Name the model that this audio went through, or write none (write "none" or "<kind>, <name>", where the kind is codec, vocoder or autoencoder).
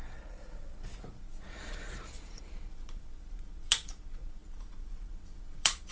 vocoder, Vocos